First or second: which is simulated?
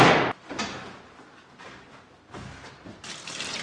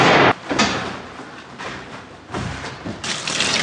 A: second